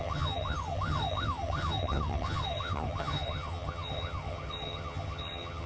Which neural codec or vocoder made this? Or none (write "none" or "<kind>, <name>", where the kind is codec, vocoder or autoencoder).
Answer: vocoder, HiFi-GAN